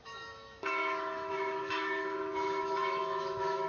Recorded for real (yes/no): no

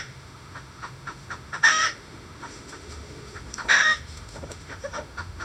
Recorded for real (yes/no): no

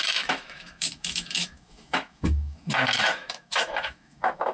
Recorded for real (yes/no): no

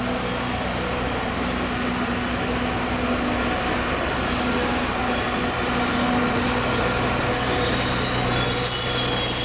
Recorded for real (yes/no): yes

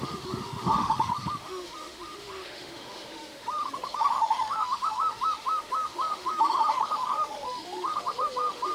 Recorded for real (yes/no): no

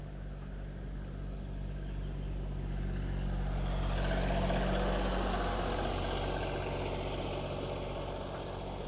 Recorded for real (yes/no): yes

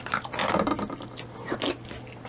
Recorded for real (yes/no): yes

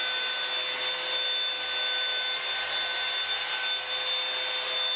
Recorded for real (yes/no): yes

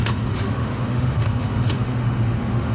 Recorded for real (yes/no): no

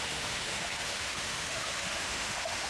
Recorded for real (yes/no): no